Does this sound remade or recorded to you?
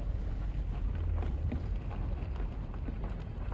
recorded